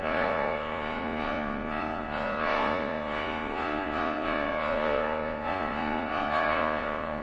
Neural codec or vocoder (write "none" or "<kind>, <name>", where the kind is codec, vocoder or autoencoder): vocoder, Vocos